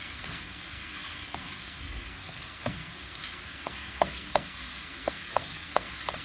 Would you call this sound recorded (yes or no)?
no